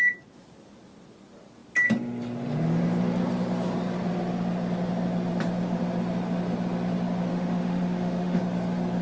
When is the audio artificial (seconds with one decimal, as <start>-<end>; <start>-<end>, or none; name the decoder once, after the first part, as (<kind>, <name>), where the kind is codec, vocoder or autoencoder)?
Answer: 7.3-8.4 (autoencoder, DAC-VAE)